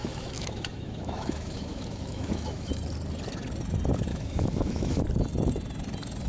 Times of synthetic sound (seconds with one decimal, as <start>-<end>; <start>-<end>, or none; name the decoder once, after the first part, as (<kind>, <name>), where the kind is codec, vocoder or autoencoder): 0.0-2.7 (autoencoder, DAC-VAE); 4.1-5.0